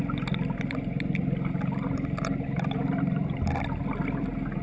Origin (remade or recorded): recorded